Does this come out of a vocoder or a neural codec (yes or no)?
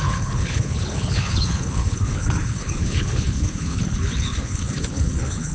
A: yes